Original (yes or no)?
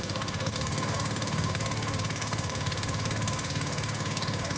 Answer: no